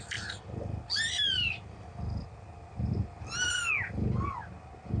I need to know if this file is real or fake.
real